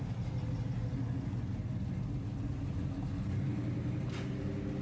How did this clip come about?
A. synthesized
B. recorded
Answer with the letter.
B